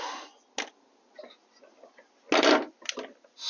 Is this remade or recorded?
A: recorded